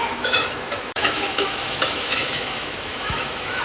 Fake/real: fake